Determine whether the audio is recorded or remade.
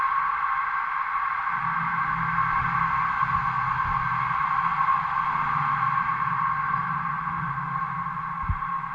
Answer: recorded